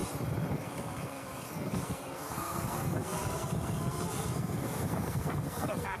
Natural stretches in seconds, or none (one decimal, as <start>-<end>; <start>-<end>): 0.0-0.5